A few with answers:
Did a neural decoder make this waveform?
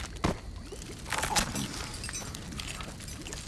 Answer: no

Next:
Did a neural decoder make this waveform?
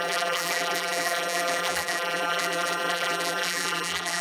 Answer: yes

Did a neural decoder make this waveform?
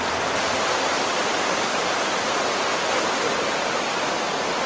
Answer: yes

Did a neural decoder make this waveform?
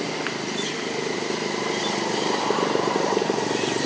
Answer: yes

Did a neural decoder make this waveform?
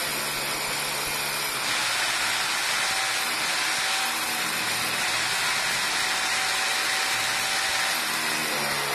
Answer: no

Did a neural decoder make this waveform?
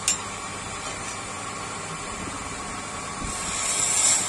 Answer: no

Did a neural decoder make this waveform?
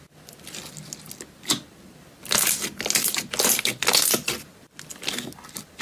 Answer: no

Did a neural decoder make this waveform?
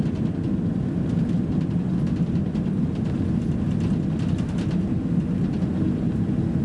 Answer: no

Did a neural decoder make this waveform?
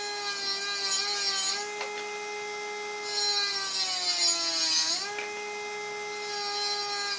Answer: no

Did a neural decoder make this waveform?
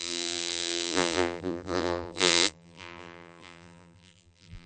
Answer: yes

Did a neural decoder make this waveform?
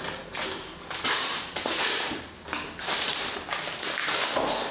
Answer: yes